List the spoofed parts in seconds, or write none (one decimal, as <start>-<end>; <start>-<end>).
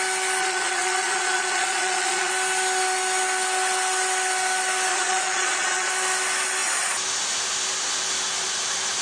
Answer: 0.4-2.3; 4.9-5.9